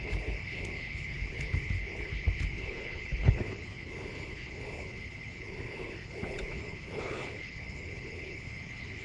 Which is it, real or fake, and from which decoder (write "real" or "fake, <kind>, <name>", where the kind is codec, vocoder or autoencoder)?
fake, codec, HILCodec